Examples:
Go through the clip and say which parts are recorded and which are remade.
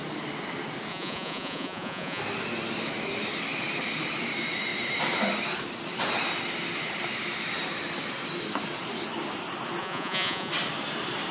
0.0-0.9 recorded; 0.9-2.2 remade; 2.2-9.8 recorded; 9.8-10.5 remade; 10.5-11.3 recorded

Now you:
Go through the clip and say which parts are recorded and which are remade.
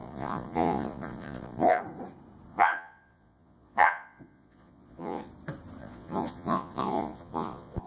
0.0-1.8 remade; 1.8-2.5 recorded; 2.5-5.3 remade; 5.3-5.8 recorded; 5.8-7.9 remade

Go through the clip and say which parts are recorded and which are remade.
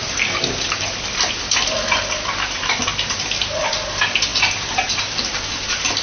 0.0-6.0 recorded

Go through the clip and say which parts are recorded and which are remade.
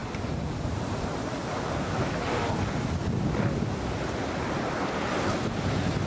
0.0-6.1 recorded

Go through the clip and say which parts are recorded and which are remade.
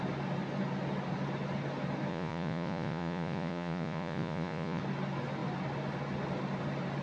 0.0-2.1 recorded; 2.1-4.8 remade; 4.8-7.0 recorded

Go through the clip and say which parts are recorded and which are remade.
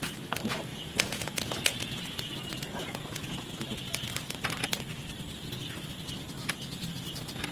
0.0-0.7 recorded; 0.7-3.5 remade; 3.5-7.5 recorded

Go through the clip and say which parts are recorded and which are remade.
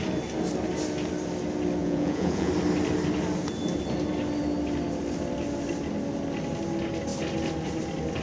0.0-1.8 recorded; 1.8-2.5 remade; 2.5-8.2 recorded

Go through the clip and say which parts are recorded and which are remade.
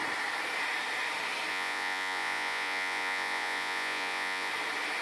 0.0-1.5 recorded; 1.5-4.5 remade; 4.5-5.0 recorded